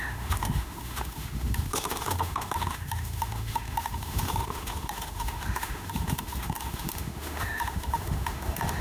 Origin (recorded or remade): remade